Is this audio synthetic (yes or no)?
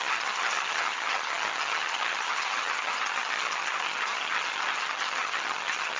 yes